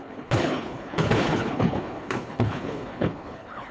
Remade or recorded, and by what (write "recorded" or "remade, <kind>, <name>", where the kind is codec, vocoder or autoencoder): remade, codec, HILCodec